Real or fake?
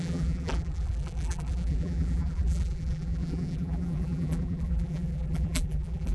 fake